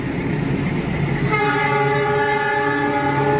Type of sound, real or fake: real